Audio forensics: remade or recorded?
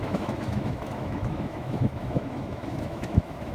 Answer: remade